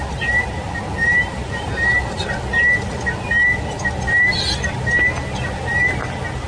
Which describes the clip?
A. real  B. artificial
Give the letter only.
A